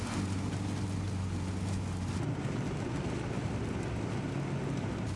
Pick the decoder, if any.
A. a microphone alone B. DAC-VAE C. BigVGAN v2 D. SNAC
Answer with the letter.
A